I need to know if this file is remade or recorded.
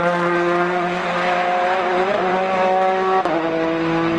recorded